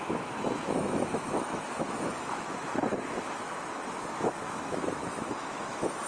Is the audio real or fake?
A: fake